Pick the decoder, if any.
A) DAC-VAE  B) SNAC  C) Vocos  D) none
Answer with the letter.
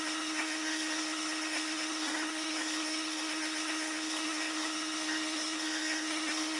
B